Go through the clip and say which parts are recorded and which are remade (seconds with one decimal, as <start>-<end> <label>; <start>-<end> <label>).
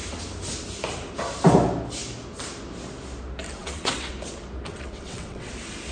0.0-3.6 recorded; 3.6-4.1 remade; 4.1-4.7 recorded; 4.7-5.5 remade; 5.5-5.9 recorded